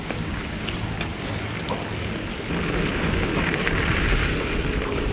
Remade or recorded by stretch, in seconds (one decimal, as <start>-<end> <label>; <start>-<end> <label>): 0.0-0.4 remade; 0.4-2.9 recorded; 2.9-3.3 remade; 3.3-5.1 recorded